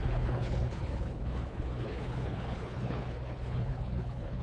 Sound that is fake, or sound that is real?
fake